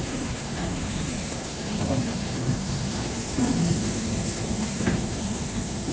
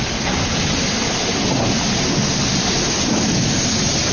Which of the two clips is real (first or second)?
second